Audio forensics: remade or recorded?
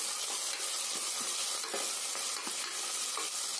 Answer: recorded